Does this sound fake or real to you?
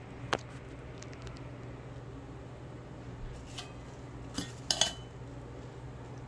real